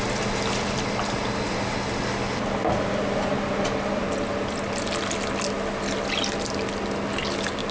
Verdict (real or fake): real